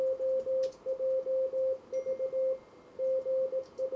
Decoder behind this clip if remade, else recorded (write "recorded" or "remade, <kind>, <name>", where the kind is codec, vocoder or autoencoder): recorded